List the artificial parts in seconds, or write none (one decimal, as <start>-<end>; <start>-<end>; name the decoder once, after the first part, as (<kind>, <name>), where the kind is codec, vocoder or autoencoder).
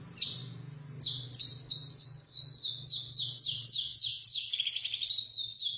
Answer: none